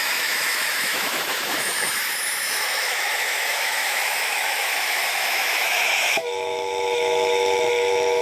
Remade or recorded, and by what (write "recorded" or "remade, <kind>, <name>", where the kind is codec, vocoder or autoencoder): remade, autoencoder, DAC-VAE